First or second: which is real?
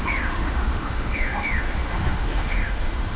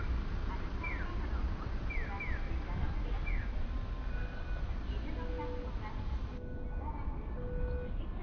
second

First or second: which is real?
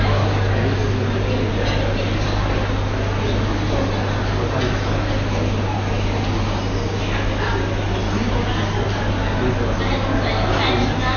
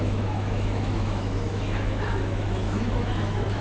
first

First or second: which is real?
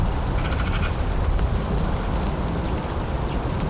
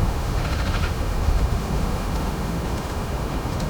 first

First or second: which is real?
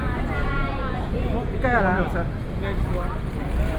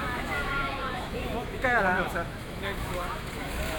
first